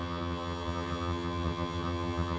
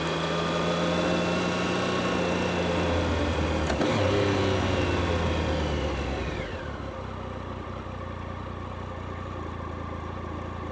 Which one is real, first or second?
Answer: second